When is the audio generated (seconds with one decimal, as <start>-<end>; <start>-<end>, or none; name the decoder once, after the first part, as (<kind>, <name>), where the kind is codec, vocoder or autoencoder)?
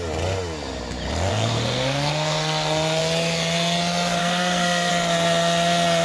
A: 1.3-3.0 (codec, SNAC); 4.2-4.9